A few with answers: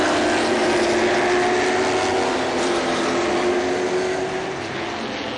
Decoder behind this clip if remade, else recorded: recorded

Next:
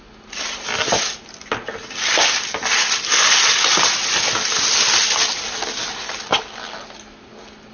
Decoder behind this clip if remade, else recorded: recorded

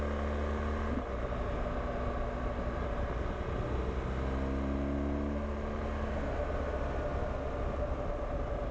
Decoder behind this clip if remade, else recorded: recorded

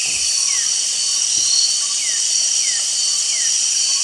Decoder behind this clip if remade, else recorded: recorded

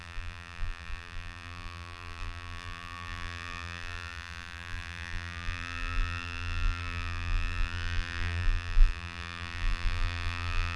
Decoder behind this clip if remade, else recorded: remade, vocoder, BigVGAN v2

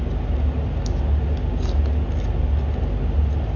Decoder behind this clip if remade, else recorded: recorded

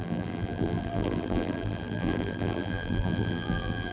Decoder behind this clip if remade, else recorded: remade, vocoder, BigVGAN v2